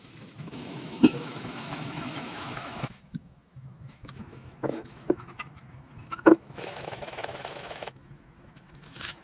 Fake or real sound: fake